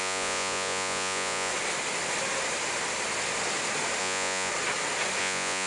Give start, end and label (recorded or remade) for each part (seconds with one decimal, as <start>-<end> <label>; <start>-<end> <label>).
0.0-1.5 remade; 1.5-4.0 recorded; 4.0-4.5 remade; 4.5-5.2 recorded; 5.2-5.7 remade